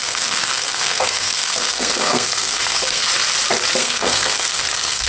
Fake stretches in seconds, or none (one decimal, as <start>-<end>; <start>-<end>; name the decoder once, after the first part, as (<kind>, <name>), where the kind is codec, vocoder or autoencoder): 0.0-3.1 (codec, SNAC); 3.8-5.1